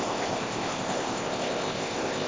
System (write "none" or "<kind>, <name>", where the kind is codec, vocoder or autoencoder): codec, ZipCodec